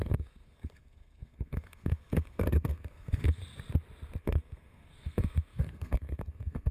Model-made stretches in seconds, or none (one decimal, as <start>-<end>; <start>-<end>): 0.0-3.4; 4.2-6.7